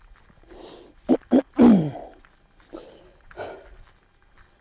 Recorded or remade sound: recorded